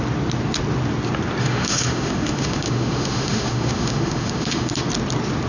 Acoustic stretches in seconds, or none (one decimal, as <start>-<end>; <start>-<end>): 0.0-1.4; 4.7-5.5